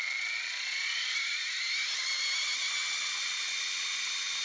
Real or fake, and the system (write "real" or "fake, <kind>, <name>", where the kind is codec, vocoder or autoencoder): real